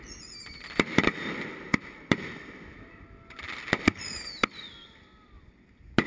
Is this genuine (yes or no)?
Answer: yes